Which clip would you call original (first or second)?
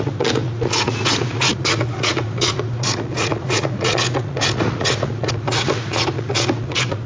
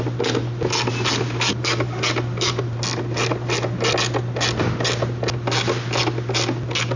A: second